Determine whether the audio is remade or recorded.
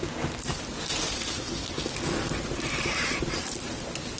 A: recorded